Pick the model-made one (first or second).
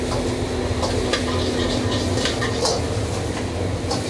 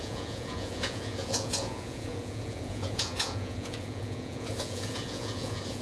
second